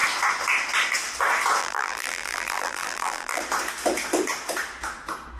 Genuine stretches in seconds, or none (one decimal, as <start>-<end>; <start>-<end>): 0.0-1.6; 3.4-5.4